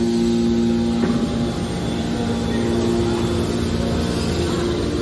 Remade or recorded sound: recorded